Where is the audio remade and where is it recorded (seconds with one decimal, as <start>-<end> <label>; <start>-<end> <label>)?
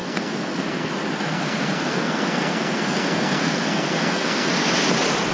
0.0-0.9 remade; 0.9-1.3 recorded; 1.3-4.5 remade; 4.5-5.3 recorded